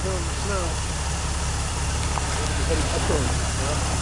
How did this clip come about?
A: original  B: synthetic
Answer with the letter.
A